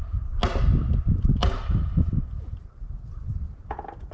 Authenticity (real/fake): real